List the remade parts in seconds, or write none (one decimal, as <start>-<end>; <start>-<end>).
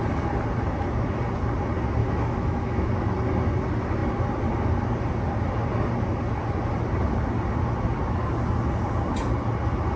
2.0-2.9